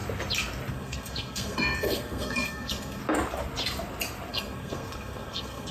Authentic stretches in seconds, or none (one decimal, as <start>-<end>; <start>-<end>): 0.0-0.7; 3.0-4.3